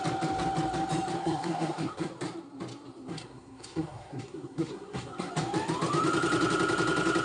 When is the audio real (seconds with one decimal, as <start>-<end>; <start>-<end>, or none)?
0.0-1.2; 2.1-3.1; 5.3-7.2